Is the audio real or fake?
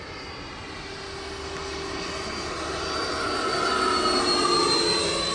real